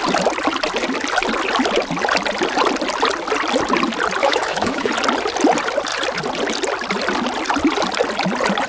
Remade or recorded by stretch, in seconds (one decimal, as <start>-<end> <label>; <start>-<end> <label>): 0.0-4.2 recorded; 4.2-4.9 remade; 4.9-8.7 recorded